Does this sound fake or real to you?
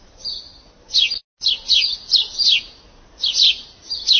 real